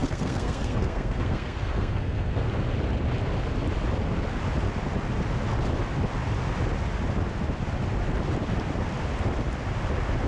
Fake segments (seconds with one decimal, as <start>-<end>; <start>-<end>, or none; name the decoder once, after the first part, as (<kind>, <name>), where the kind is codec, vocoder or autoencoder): 0.0-2.5 (codec, SNAC)